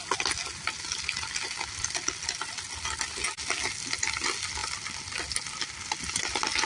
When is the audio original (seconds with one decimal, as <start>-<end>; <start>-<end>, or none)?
0.0-6.7